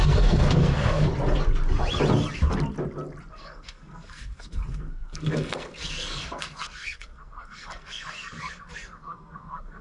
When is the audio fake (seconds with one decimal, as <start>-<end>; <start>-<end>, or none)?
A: 0.0-1.1; 3.3-9.8